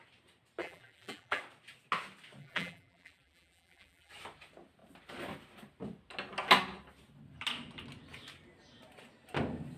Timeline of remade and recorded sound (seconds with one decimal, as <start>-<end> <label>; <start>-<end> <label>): 0.0-0.6 recorded; 0.6-1.4 remade; 1.4-2.4 recorded; 2.4-4.1 remade; 4.1-9.8 recorded